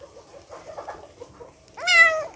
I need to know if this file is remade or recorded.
recorded